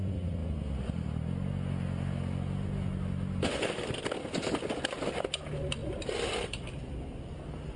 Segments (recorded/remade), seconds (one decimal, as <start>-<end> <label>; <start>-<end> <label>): 0.0-7.8 recorded